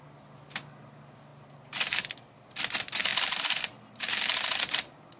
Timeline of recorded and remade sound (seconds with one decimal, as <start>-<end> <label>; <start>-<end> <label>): 0.0-5.2 recorded